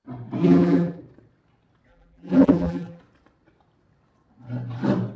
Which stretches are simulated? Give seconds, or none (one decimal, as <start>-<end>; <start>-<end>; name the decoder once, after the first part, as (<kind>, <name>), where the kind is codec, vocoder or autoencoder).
0.4-1.0 (vocoder, BigVGAN v2); 1.9-3.0